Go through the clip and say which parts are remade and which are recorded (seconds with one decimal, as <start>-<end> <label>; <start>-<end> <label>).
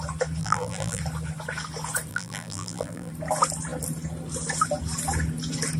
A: 0.0-0.4 recorded; 0.4-1.0 remade; 1.0-2.1 recorded; 2.1-3.1 remade; 3.1-5.8 recorded